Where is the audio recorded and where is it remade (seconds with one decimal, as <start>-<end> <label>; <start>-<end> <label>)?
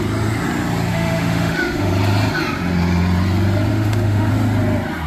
0.0-0.9 recorded; 0.9-1.9 remade; 1.9-3.7 recorded; 3.7-4.3 remade; 4.3-5.1 recorded